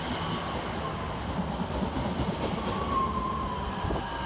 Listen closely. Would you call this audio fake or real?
real